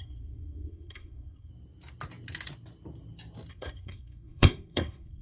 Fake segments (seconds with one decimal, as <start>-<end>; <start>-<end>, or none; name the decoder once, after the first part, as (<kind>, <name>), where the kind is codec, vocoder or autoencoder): 0.0-1.5 (codec, SNAC); 3.5-5.2